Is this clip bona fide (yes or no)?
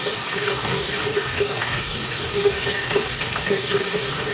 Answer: no